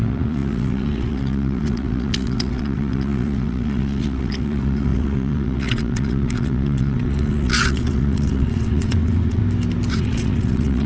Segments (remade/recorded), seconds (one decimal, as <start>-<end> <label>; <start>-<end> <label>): 0.0-9.4 remade; 9.4-9.9 recorded; 9.9-10.9 remade